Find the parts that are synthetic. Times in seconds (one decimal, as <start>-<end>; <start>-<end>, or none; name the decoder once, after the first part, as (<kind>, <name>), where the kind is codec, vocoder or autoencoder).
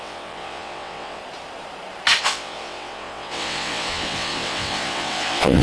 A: 0.0-1.2 (vocoder, WaveNeXt); 2.2-5.6